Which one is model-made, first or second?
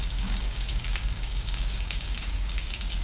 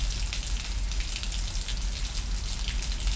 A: first